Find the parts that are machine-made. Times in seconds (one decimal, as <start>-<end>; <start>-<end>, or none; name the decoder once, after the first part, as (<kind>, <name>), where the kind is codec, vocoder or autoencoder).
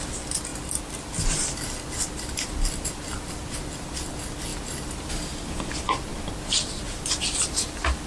none